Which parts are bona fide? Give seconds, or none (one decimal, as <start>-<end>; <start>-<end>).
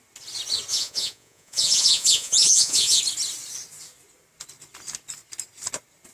0.0-0.7; 3.0-6.1